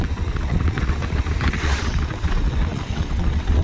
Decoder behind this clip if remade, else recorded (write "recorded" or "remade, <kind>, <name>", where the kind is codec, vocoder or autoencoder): remade, vocoder, WaveNeXt